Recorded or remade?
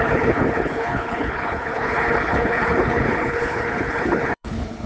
remade